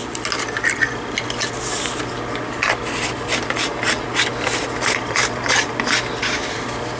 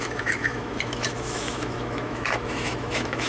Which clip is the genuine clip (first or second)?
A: first